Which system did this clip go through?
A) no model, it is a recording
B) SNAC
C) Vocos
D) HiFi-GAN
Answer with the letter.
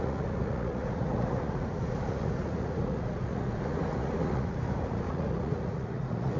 C